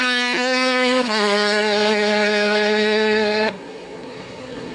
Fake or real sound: fake